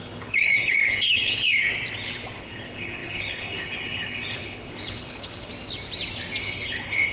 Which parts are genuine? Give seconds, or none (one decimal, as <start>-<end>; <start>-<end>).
1.6-2.4; 5.5-6.4